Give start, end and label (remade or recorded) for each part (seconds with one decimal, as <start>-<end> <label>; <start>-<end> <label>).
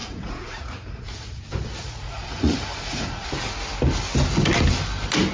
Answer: 0.0-1.4 remade; 1.4-1.8 recorded; 1.8-3.3 remade; 3.3-5.3 recorded